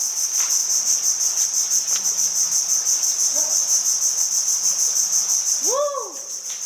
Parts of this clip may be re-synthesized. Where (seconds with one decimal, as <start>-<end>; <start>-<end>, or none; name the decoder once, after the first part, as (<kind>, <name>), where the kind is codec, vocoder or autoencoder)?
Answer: none

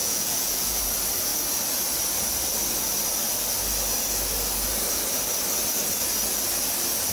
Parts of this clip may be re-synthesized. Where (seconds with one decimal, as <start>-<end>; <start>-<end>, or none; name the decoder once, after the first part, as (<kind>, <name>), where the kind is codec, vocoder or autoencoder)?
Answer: 0.0-0.8 (vocoder, Vocos)

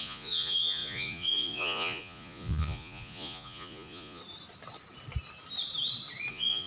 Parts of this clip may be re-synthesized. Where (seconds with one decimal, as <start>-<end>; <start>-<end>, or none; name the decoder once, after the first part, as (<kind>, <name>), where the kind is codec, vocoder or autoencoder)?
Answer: 0.0-4.2 (vocoder, Vocos); 6.3-6.7

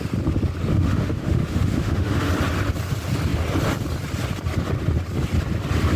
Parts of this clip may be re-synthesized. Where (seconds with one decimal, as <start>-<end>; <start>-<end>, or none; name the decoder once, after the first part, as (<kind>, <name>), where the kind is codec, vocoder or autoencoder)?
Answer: 0.7-2.3 (autoencoder, DAC-VAE)